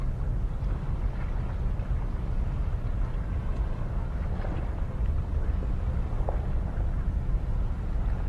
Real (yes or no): yes